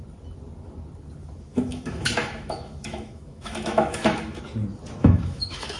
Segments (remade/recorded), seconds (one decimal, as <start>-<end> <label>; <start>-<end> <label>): 0.0-1.5 recorded; 1.5-4.4 remade; 4.4-5.0 recorded; 5.0-5.8 remade